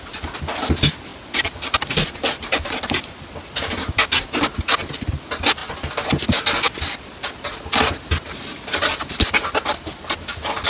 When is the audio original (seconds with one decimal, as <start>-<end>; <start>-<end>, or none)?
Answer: 0.0-10.7